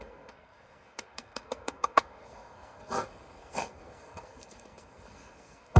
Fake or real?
fake